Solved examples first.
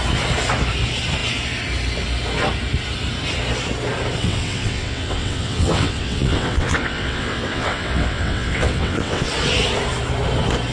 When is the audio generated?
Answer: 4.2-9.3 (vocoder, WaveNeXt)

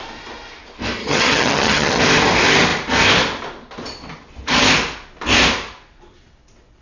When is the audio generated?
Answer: 1.0-2.0 (vocoder, HiFi-GAN)

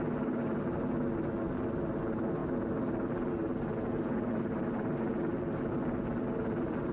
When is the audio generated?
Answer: none

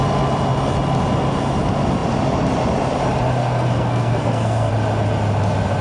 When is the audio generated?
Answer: 3.4-4.7 (codec, SNAC)

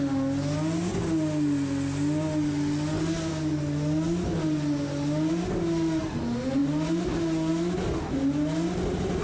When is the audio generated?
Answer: none